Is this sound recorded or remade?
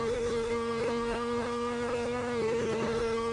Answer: remade